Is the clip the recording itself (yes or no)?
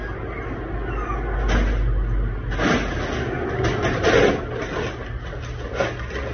yes